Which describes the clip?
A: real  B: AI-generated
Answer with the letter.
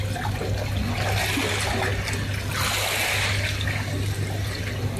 A